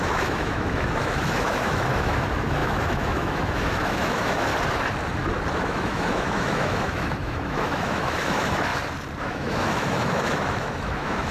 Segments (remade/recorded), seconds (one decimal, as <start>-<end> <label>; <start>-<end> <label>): 0.0-4.5 remade; 4.5-5.6 recorded; 5.6-8.7 remade; 8.7-9.2 recorded; 9.2-11.3 remade